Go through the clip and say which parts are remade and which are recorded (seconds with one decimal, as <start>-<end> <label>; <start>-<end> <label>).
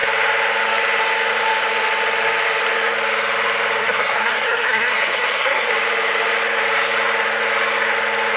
0.0-3.8 recorded; 3.8-5.7 remade; 5.7-8.4 recorded